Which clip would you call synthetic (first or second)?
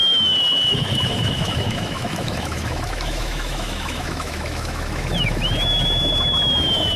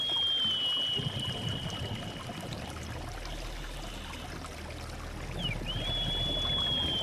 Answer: first